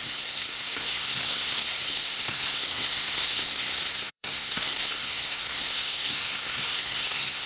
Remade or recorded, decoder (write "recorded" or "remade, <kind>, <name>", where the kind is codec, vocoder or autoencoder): remade, codec, SNAC